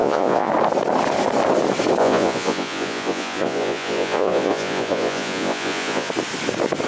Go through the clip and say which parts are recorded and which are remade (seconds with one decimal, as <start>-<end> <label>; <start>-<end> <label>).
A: 0.0-0.5 remade; 0.5-2.0 recorded; 2.0-6.1 remade; 6.1-6.9 recorded